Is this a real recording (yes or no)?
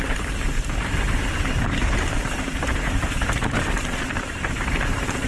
no